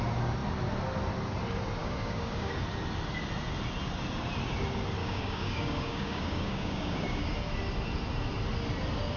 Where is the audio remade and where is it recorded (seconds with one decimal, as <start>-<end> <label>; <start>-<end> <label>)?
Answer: 0.0-1.8 recorded; 1.8-2.5 remade; 2.5-5.0 recorded; 5.0-7.3 remade; 7.3-9.2 recorded